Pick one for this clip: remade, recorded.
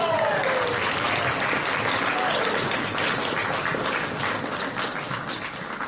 recorded